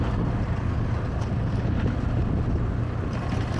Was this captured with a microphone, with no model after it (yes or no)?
yes